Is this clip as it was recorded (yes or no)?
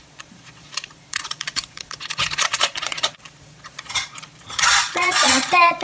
no